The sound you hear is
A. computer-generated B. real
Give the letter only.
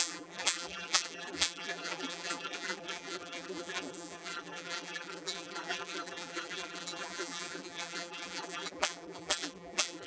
A